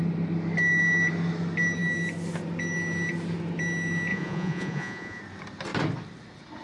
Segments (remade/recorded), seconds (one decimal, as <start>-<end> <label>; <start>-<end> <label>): 0.0-4.1 recorded; 4.1-5.2 remade; 5.2-6.6 recorded